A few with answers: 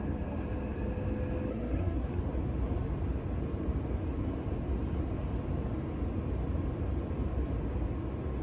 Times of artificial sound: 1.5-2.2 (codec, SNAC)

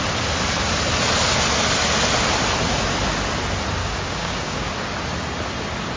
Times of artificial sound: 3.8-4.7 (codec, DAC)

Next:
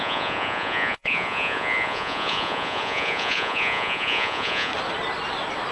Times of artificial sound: 0.0-4.7 (vocoder, Vocos)

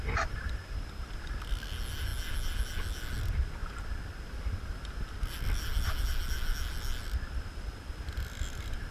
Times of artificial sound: none